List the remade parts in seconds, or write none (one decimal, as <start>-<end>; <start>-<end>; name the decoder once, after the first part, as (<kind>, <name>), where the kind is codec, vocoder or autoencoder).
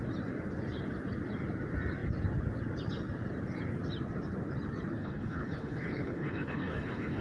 5.0-7.2 (codec, HILCodec)